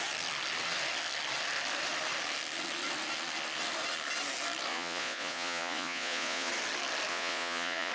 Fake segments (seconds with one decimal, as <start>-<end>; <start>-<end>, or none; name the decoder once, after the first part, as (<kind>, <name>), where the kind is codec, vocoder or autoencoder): 4.7-6.5 (vocoder, Vocos); 7.1-7.9